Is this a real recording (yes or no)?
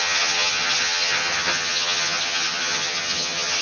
no